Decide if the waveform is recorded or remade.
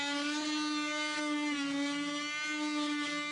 recorded